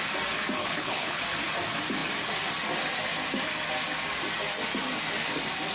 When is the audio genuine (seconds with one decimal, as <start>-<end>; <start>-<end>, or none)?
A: 0.0-0.6; 1.2-5.7

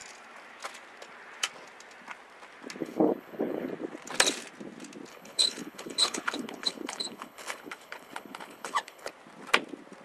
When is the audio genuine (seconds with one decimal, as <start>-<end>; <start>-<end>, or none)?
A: 0.0-2.8; 3.7-5.1; 9.1-10.0

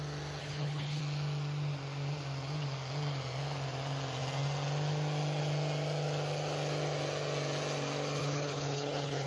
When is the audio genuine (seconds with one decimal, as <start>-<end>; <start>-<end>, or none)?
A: 0.0-0.4; 1.0-8.2

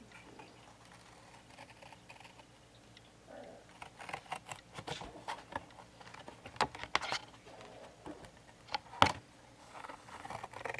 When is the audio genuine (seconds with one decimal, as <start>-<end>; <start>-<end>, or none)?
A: 0.0-9.6; 10.3-10.8

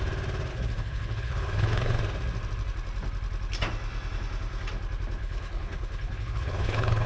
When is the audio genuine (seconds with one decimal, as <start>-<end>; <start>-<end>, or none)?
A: 0.0-0.5; 2.0-5.2